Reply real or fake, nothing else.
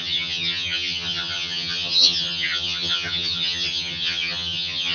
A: fake